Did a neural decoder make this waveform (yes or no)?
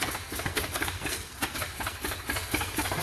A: yes